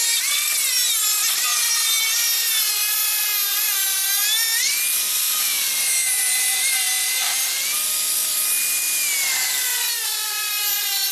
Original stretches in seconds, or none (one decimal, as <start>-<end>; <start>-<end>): 0.0-11.1